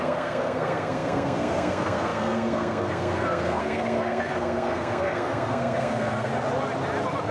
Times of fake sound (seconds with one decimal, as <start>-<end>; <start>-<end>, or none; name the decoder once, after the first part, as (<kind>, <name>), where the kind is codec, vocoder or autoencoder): 0.0-6.3 (codec, SNAC)